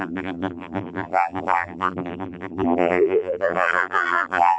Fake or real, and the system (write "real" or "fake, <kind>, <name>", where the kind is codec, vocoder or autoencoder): fake, vocoder, BigVGAN v2